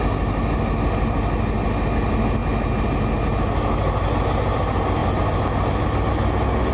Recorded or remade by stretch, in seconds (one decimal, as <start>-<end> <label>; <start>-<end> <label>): 0.0-6.7 recorded

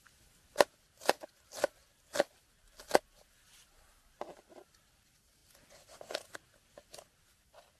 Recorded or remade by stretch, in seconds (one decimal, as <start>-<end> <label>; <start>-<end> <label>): 0.0-7.8 recorded

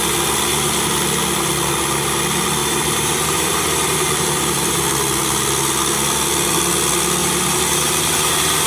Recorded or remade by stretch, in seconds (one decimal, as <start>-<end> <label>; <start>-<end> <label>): 0.0-2.6 recorded; 2.6-4.8 remade; 4.8-7.2 recorded; 7.2-8.7 remade

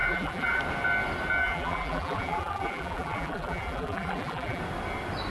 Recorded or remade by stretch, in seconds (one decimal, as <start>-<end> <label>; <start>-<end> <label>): 0.0-0.6 remade; 0.6-1.4 recorded; 1.4-4.6 remade; 4.6-5.3 recorded